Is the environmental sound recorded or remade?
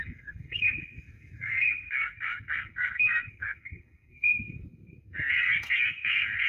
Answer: remade